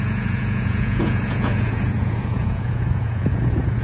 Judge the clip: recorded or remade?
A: remade